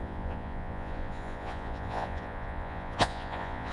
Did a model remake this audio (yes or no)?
yes